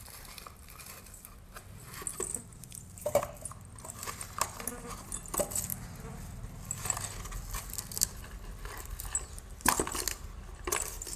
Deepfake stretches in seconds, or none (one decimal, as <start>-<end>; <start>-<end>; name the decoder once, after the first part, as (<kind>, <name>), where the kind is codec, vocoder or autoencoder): 2.1-3.3 (vocoder, BigVGAN v2)